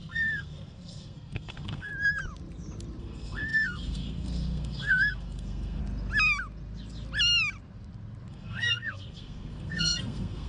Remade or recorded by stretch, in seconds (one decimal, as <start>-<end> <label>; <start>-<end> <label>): 0.0-1.9 remade; 1.9-3.0 recorded; 3.0-5.8 remade; 5.8-8.3 recorded; 8.3-10.5 remade